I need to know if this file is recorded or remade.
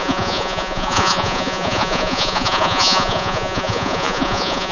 remade